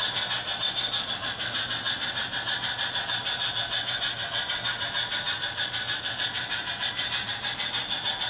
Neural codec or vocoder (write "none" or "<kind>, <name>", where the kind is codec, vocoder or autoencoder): none